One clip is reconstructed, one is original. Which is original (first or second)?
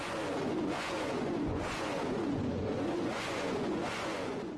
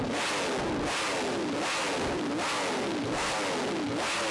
second